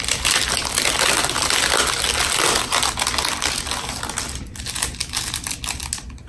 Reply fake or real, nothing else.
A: real